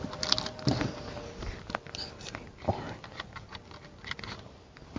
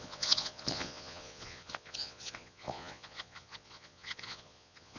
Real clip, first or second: first